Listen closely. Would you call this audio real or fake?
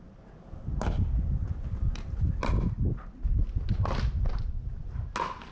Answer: real